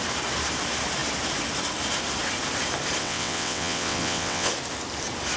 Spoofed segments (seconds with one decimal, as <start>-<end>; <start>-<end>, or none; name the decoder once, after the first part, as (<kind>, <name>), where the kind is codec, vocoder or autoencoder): 3.0-4.5 (vocoder, WaveNeXt)